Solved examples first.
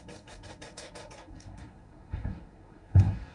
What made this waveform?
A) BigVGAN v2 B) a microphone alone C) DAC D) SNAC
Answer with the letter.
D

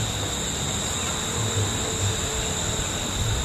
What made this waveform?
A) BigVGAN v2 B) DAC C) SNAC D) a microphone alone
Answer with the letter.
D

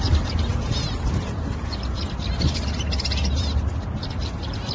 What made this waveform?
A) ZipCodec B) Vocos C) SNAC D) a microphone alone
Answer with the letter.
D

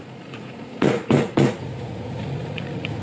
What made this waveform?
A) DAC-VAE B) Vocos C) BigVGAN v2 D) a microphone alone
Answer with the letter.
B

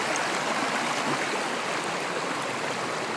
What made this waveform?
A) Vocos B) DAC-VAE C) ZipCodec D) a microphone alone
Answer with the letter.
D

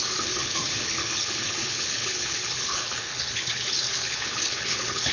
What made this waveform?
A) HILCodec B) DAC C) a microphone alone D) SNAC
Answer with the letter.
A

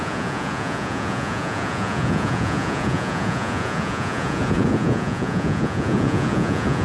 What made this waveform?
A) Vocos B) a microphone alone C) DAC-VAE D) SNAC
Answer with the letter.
A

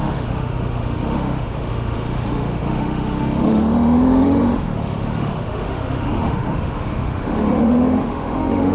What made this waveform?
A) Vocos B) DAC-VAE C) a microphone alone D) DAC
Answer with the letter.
B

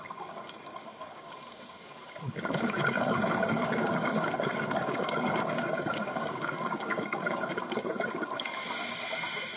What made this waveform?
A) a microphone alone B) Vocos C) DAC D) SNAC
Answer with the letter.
C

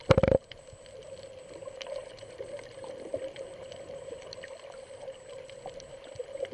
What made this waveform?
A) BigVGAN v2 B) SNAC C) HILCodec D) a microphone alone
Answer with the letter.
D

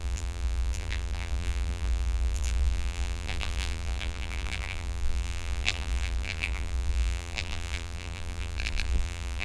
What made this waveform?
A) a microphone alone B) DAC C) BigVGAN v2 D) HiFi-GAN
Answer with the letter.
C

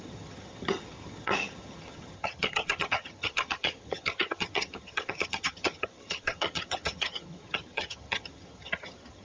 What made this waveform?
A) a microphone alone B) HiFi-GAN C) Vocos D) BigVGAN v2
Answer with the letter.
B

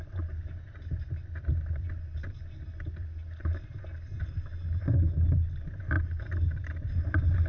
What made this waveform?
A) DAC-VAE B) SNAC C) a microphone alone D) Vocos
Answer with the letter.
C